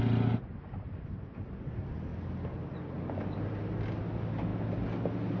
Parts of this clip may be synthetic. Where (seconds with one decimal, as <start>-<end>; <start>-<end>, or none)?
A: none